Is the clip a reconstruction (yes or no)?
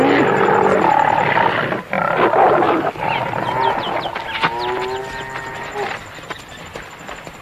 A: no